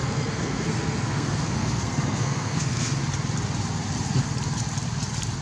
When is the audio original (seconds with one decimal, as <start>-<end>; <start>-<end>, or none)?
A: 3.0-5.4